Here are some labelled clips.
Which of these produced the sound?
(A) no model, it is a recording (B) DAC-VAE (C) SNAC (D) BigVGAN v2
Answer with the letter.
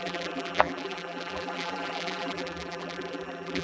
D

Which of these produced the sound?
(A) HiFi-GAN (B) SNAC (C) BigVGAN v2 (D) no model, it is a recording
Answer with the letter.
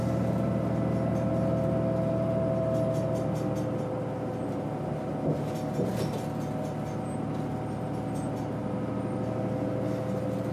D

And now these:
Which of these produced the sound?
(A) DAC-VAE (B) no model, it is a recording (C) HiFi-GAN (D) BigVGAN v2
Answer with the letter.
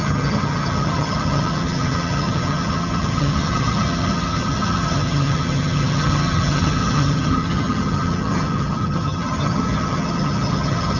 C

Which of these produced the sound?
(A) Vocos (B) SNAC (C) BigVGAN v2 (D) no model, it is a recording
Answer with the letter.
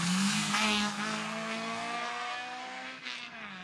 B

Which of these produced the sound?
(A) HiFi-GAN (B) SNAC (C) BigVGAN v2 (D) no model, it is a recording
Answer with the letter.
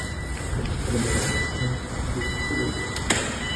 C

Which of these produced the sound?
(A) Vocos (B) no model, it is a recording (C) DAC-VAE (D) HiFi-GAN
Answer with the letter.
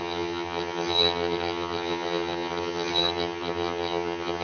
D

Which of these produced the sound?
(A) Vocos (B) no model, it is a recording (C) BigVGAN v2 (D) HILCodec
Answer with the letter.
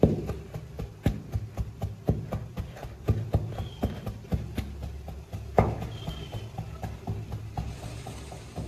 B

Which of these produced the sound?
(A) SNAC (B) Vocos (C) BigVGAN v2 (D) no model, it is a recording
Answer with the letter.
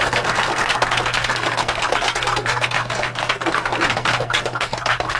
A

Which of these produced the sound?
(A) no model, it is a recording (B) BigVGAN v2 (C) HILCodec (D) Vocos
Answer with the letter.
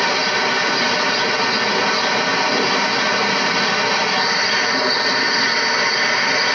A